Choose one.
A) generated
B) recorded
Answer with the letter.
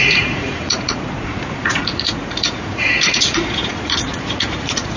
A